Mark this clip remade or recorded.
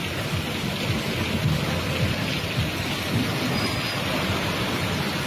recorded